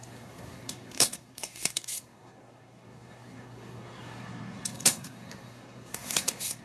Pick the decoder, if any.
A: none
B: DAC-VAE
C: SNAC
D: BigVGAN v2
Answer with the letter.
C